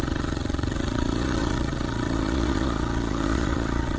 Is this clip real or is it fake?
fake